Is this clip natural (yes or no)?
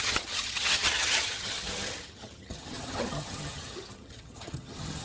no